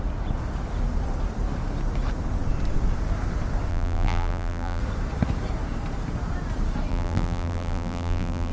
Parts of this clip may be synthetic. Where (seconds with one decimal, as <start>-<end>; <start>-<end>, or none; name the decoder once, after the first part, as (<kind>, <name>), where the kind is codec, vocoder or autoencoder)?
3.7-4.8 (vocoder, BigVGAN v2); 6.9-8.5

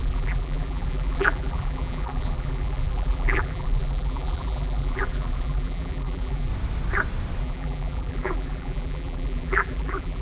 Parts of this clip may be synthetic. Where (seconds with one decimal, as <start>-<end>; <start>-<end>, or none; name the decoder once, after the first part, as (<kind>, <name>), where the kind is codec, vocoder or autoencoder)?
0.0-6.5 (vocoder, BigVGAN v2); 7.4-10.2

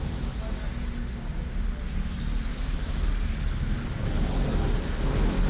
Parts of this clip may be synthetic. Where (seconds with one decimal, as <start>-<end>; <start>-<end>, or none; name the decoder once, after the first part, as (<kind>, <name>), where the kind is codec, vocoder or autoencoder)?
none

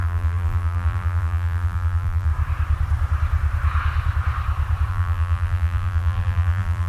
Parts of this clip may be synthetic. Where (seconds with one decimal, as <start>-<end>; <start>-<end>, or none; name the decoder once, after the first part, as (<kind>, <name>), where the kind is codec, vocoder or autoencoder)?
0.0-2.3 (vocoder, BigVGAN v2); 4.9-6.9

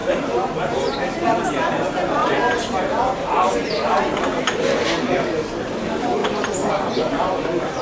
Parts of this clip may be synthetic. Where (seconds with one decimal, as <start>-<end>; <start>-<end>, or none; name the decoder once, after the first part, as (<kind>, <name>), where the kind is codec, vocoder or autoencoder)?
0.0-2.2 (vocoder, BigVGAN v2); 5.8-7.8

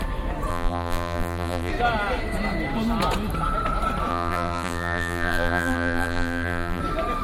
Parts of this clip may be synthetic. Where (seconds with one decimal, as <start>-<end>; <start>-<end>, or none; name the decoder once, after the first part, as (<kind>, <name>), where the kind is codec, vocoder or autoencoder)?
0.5-1.7 (vocoder, BigVGAN v2); 4.1-6.8

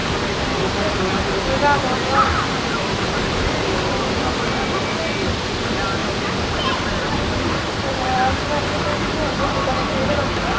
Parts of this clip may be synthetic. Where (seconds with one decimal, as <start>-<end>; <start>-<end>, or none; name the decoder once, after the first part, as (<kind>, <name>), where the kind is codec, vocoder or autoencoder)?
0.0-1.3 (vocoder, BigVGAN v2); 1.9-3.3; 6.0-10.0

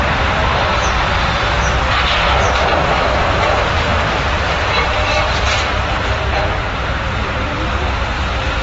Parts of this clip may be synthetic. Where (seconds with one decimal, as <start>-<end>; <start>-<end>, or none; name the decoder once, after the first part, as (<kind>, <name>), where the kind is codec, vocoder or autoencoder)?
0.0-0.4 (vocoder, BigVGAN v2); 3.5-3.9; 5.3-8.6